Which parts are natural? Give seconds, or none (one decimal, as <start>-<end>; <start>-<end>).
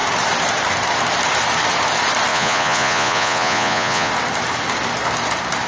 0.0-2.3; 4.1-5.7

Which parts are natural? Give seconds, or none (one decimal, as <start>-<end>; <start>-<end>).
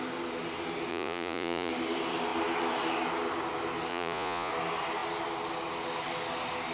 0.0-0.9; 1.7-3.9; 4.5-6.7